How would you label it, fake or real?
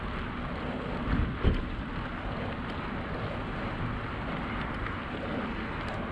real